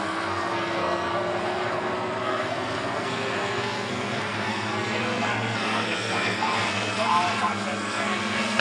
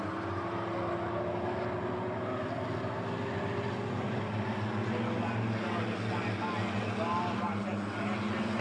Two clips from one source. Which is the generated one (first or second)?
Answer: first